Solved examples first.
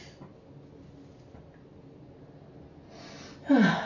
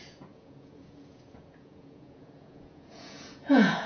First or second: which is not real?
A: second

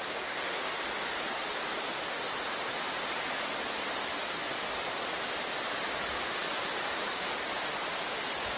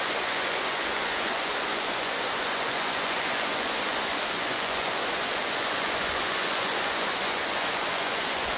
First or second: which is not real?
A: second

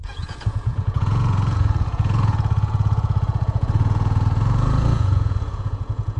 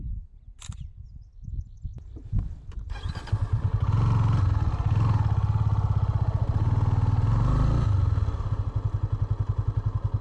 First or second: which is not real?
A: first